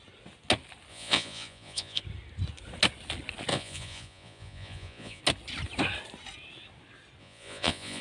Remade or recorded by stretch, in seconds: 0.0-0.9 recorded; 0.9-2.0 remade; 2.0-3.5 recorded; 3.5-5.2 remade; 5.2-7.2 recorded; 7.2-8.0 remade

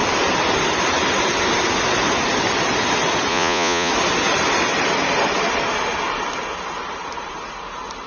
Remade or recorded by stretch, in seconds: 0.0-3.3 recorded; 3.3-3.9 remade; 3.9-8.1 recorded

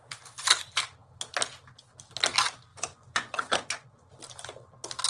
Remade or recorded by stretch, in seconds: 0.0-2.7 recorded; 2.7-4.1 remade; 4.1-5.1 recorded

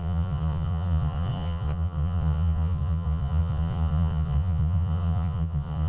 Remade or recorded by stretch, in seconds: 0.0-5.9 remade